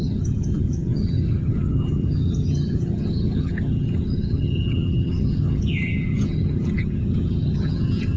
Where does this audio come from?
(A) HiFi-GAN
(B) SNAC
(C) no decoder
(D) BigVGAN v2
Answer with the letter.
A